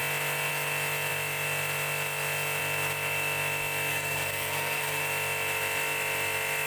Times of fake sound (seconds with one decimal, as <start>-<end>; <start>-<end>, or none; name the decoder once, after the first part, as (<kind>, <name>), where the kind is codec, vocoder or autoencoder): 3.9-5.0 (codec, SNAC)